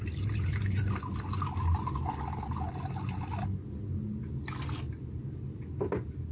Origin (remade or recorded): recorded